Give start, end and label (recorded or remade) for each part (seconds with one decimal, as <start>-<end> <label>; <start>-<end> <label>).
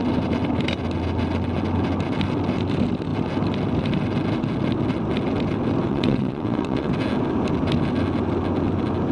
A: 0.0-5.9 recorded; 5.9-6.9 remade; 6.9-9.1 recorded